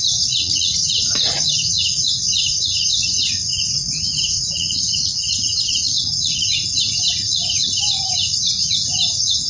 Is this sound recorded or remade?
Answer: remade